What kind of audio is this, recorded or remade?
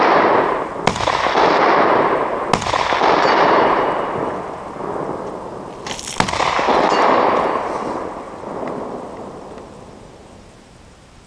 recorded